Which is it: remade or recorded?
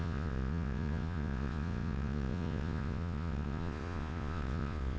remade